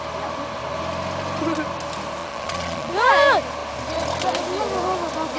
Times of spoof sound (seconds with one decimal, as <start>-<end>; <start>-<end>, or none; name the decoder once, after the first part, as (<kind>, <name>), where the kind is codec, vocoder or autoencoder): 2.2-2.9 (vocoder, Vocos)